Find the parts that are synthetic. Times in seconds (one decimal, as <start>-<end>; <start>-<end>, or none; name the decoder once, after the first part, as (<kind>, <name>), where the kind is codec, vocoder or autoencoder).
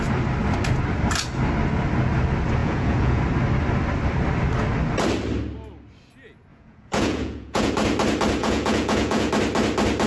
2.6-3.2 (vocoder, Vocos); 6.5-7.7; 8.4-9.3